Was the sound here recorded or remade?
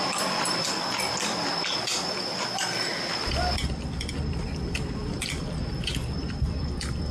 remade